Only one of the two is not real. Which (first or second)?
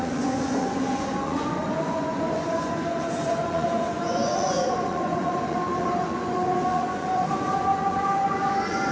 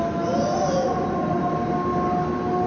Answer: first